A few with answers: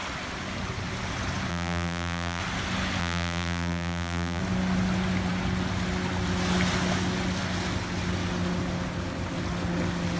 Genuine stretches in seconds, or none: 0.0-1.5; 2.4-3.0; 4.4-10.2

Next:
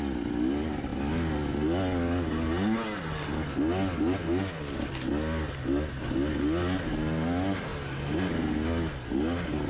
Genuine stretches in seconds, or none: 0.0-9.7

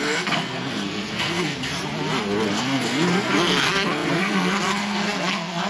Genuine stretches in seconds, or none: 1.7-2.5